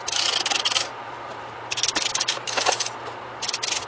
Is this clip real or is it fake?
real